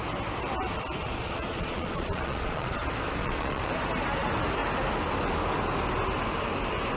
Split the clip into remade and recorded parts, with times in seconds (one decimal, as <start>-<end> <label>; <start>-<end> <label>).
0.0-1.0 recorded; 1.0-2.8 remade; 2.8-3.2 recorded; 3.2-3.7 remade; 3.7-7.0 recorded